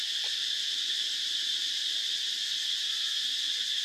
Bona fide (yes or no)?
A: yes